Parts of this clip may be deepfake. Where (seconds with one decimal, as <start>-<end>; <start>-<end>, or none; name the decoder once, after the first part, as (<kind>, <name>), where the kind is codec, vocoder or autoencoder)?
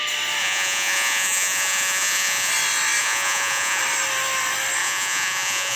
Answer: 0.4-2.5 (vocoder, Vocos); 3.0-3.8; 4.8-5.8